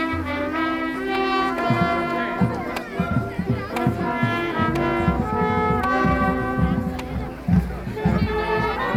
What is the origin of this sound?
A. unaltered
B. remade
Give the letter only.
A